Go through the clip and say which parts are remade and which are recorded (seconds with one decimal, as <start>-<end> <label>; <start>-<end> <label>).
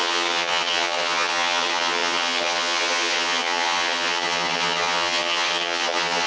0.0-6.3 remade